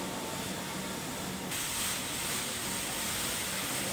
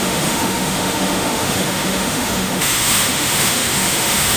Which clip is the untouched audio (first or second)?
first